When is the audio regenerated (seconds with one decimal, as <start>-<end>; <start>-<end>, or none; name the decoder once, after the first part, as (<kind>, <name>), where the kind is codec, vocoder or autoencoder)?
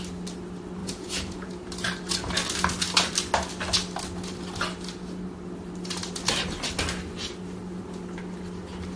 0.8-1.5 (vocoder, Vocos)